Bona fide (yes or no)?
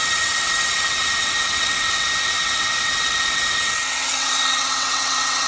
no